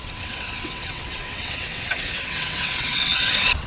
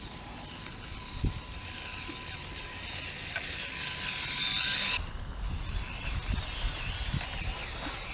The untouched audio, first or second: second